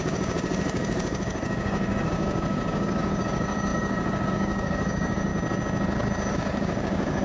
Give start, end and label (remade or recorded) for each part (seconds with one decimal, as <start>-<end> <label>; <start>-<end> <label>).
0.0-5.3 remade; 5.3-6.3 recorded; 6.3-7.2 remade